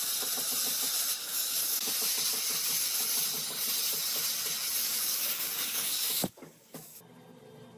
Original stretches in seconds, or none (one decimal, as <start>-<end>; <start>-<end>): 0.0-1.2; 1.9-4.8; 7.0-7.8